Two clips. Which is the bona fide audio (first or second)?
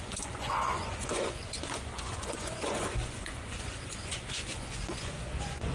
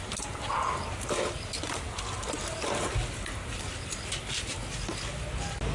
second